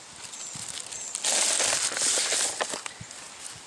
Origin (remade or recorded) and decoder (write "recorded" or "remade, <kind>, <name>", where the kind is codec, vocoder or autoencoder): recorded